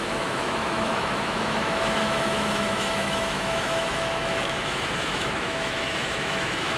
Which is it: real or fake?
fake